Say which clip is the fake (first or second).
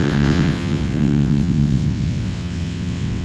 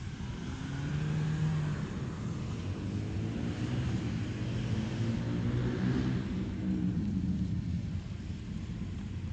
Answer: first